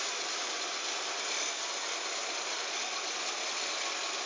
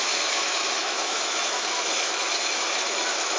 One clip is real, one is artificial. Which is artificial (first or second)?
second